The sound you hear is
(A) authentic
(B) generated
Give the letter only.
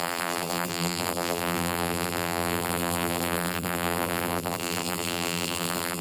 B